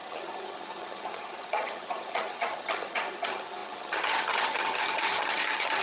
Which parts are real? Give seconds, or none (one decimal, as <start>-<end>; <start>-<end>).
none